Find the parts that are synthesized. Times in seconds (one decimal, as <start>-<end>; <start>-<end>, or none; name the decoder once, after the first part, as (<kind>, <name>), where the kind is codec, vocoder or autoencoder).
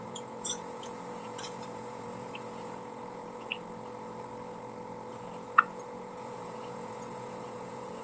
0.0-3.5 (vocoder, Vocos); 5.1-8.0